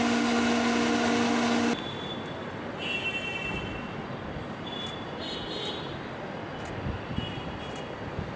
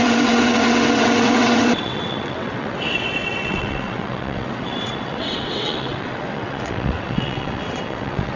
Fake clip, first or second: second